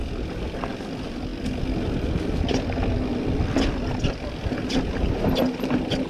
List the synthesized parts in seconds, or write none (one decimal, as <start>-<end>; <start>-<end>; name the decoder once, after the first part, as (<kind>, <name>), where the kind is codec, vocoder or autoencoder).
none